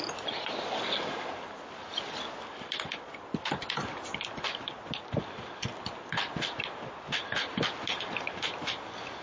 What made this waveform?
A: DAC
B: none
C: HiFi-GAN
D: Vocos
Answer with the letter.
B